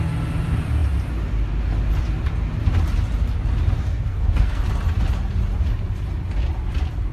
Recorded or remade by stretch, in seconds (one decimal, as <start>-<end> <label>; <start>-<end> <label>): 0.0-3.9 recorded; 3.9-4.6 remade; 4.6-7.1 recorded